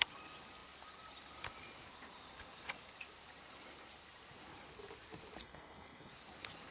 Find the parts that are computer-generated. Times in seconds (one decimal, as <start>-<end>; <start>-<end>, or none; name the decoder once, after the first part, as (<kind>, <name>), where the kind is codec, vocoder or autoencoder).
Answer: 5.4-6.1 (codec, SNAC)